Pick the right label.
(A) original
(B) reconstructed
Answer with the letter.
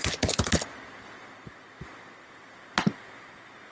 A